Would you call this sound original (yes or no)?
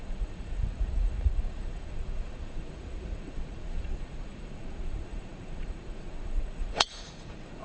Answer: no